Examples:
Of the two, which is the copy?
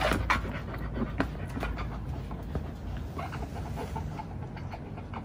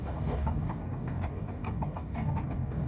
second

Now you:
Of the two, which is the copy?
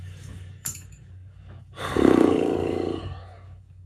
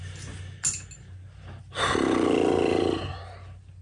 first